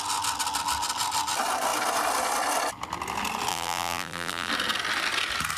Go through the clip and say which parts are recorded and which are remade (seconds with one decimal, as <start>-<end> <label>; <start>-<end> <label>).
0.0-3.5 recorded; 3.5-4.5 remade; 4.5-5.6 recorded